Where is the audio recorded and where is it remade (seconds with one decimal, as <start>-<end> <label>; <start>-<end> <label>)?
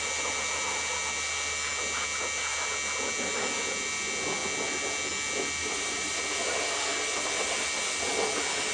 0.0-5.6 recorded; 5.6-6.2 remade; 6.2-8.7 recorded